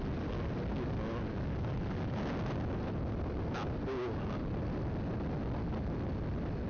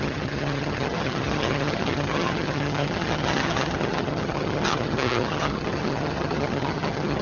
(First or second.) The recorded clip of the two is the first